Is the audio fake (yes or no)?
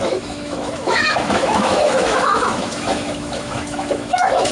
yes